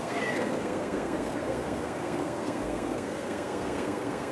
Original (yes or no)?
no